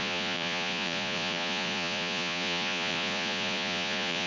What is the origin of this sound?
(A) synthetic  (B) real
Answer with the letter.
A